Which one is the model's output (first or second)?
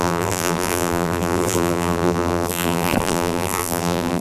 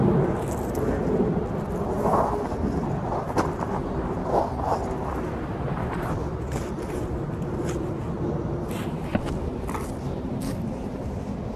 first